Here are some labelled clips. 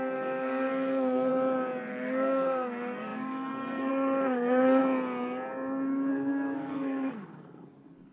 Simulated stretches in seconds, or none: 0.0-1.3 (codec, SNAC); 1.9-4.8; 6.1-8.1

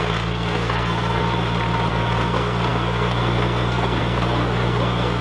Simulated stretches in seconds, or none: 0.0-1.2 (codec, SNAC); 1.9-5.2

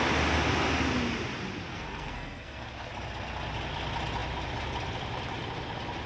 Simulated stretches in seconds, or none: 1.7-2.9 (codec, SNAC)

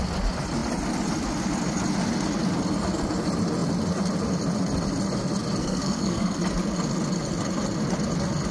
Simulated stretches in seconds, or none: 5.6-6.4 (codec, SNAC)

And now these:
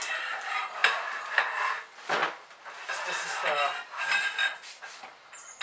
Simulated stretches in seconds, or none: none